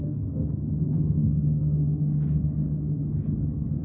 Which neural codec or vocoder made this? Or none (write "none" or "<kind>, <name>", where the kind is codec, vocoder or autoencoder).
codec, SNAC